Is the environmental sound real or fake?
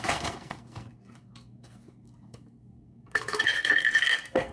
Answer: fake